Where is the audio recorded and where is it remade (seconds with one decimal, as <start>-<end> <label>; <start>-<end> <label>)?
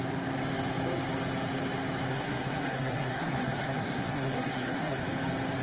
0.0-2.1 recorded; 2.1-5.0 remade; 5.0-5.6 recorded